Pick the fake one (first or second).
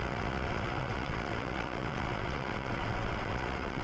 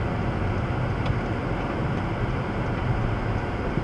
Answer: first